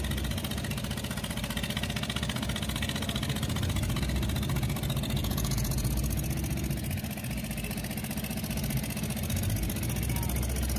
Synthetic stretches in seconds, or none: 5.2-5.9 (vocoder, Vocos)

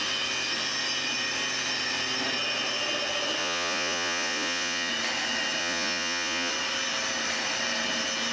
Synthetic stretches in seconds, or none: 3.4-4.9 (vocoder, Vocos); 5.6-6.5

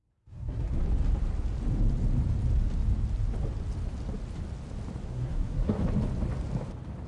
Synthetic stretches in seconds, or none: 0.0-0.8 (codec, SNAC); 5.1-5.8

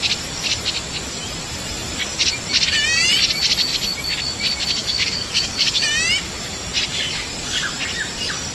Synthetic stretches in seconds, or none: 4.8-5.8 (codec, DAC)

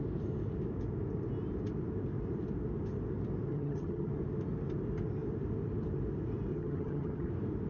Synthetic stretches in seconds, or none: 3.5-4.1 (vocoder, HiFi-GAN); 6.5-7.3